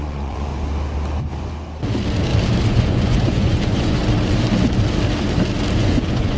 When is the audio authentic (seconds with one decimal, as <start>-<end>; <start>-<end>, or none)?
0.5-2.7; 4.0-5.8